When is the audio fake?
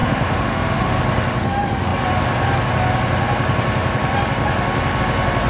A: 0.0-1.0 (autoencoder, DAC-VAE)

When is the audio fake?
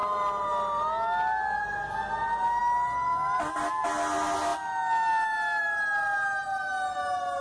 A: none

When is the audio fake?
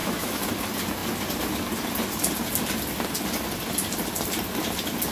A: 0.0-0.5 (autoencoder, DAC-VAE)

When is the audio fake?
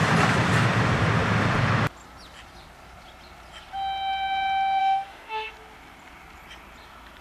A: 4.8-5.5 (autoencoder, DAC-VAE)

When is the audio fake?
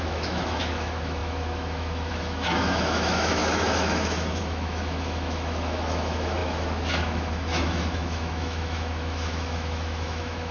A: 0.0-10.5 (autoencoder, DAC-VAE)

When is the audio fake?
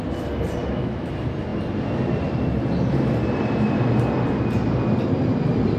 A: 0.6-1.1 (autoencoder, DAC-VAE)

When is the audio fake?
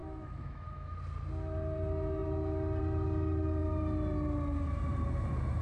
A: 0.0-1.0 (autoencoder, DAC-VAE)